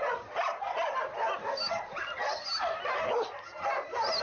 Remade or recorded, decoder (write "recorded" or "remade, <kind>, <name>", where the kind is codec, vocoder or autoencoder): recorded